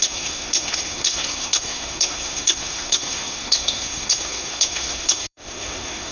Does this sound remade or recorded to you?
remade